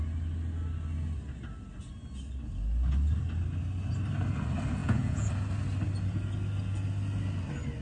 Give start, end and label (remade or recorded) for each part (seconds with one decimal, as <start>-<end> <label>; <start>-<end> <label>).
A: 0.0-4.8 recorded; 4.8-5.3 remade; 5.3-7.8 recorded